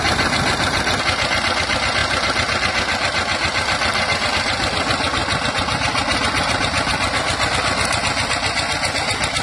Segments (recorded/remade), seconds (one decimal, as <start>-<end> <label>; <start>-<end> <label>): 0.0-9.4 recorded